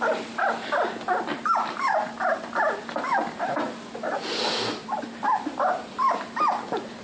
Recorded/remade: recorded